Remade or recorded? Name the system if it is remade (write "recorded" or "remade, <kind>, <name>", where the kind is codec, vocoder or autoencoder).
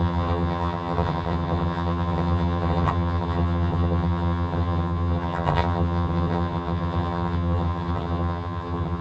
remade, vocoder, HiFi-GAN